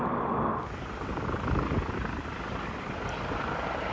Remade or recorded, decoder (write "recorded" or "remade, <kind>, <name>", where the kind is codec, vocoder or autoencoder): recorded